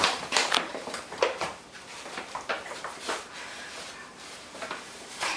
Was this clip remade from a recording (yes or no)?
yes